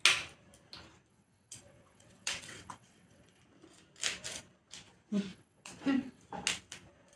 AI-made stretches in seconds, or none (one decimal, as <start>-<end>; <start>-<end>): 1.1-3.4; 5.3-6.2